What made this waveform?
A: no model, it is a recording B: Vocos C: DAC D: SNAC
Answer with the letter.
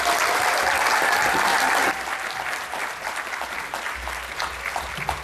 A